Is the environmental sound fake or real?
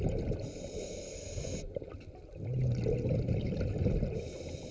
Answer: real